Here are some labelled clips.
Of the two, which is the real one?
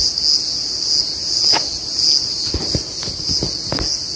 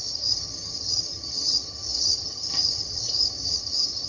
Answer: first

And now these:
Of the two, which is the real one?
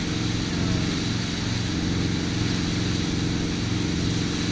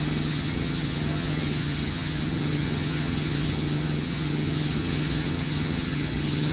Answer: first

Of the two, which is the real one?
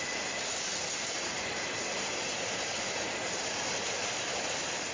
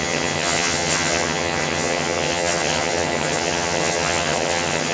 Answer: first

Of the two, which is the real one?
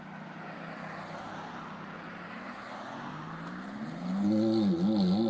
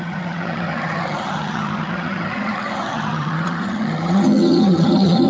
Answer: first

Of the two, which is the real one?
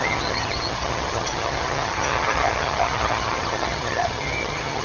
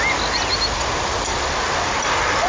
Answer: second